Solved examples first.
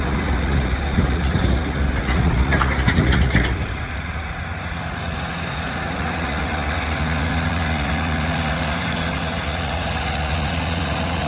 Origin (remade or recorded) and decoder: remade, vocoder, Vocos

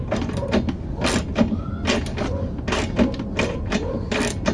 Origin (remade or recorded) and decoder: recorded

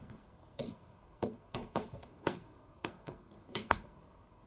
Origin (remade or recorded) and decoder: remade, codec, SNAC